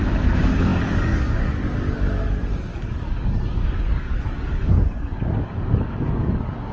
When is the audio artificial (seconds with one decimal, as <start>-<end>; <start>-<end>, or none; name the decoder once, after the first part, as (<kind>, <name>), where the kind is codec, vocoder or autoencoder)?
0.0-6.7 (codec, DAC)